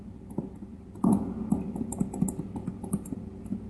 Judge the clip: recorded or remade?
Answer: recorded